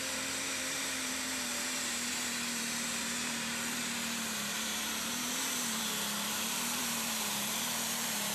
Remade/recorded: remade